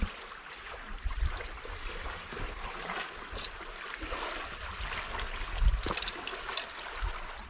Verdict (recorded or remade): recorded